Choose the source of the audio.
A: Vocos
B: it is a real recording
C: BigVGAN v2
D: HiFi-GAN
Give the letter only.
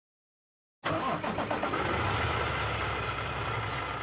B